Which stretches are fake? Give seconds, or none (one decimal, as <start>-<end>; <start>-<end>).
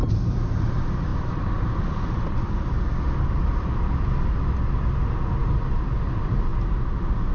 none